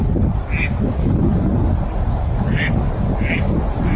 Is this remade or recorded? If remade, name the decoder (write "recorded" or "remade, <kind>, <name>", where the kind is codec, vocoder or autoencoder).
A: recorded